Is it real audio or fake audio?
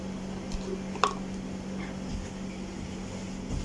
real